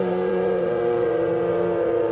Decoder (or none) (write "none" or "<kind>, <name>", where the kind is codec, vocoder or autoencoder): vocoder, Vocos